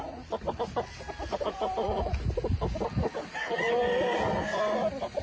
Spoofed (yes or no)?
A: no